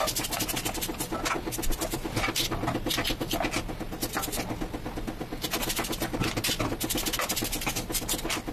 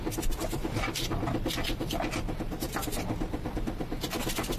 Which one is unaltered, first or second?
first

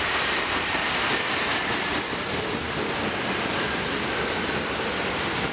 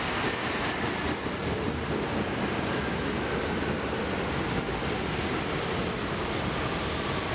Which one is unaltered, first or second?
second